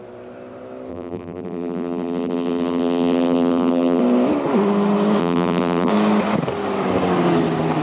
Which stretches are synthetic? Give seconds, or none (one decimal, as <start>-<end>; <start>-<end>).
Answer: 0.9-4.0; 5.2-5.9